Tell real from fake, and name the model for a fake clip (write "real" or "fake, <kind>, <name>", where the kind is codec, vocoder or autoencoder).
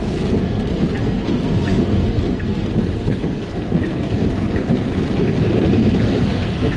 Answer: fake, codec, SNAC